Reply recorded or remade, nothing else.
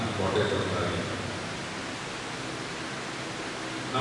recorded